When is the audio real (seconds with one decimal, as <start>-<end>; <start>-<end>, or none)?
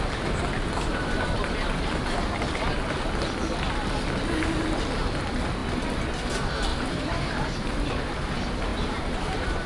0.0-0.9; 1.9-6.7; 8.2-8.7